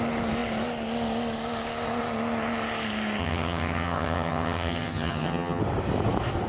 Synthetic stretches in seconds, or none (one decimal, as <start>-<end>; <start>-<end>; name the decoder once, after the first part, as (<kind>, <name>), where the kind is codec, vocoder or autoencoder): 3.2-5.6 (vocoder, HiFi-GAN)